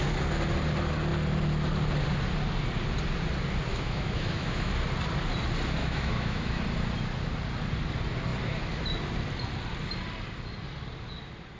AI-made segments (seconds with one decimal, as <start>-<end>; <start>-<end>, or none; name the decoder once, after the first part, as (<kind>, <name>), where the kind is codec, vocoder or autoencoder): 3.7-4.7 (autoencoder, DAC-VAE); 5.8-6.6